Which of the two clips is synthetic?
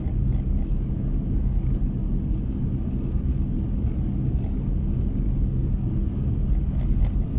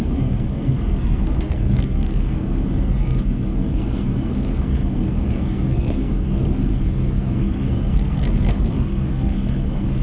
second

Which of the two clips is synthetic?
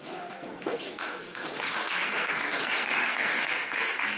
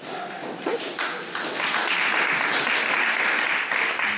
first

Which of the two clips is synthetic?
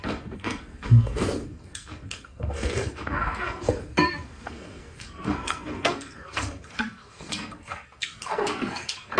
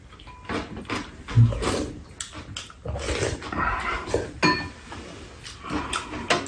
first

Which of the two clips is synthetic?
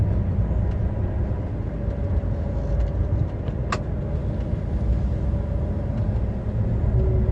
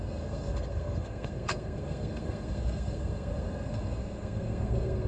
second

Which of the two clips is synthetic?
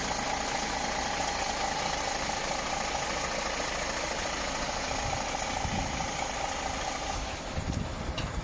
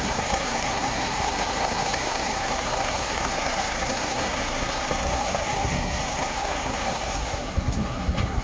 second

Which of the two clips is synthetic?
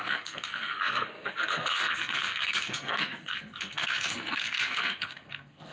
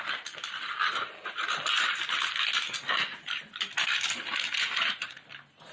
first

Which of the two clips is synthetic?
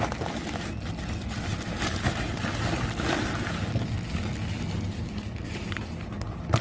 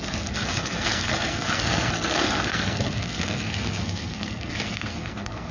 second